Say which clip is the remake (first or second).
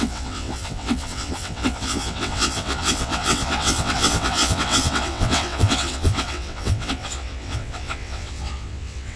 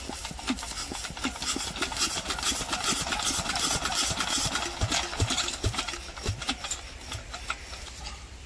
first